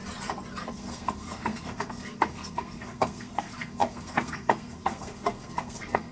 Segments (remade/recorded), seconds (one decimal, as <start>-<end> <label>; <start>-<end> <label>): 0.0-0.7 recorded; 0.7-6.1 remade